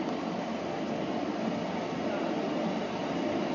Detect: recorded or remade recorded